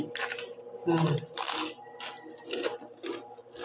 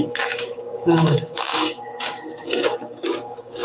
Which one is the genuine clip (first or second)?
first